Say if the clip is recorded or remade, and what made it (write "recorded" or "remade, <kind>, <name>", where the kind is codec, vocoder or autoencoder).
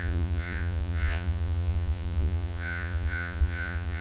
remade, vocoder, Vocos